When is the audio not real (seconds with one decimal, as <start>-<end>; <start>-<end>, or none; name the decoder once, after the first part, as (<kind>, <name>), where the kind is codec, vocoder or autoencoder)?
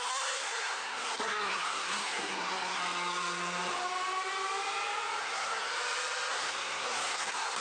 0.0-2.8 (codec, SNAC); 5.2-5.7; 6.3-7.6